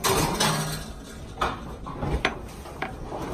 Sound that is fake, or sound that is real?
real